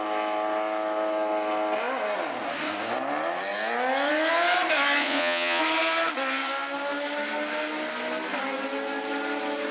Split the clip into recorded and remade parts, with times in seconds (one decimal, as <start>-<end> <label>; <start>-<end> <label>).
0.0-5.0 recorded; 5.0-5.6 remade; 5.6-9.7 recorded